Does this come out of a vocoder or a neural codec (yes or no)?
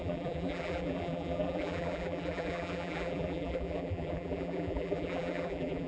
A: yes